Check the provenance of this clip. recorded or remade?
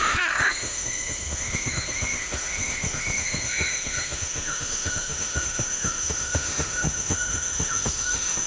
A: remade